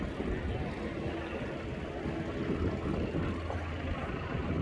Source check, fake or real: real